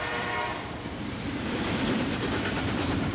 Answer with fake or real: fake